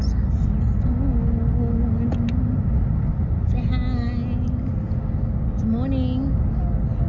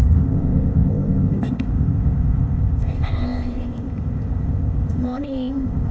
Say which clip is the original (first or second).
first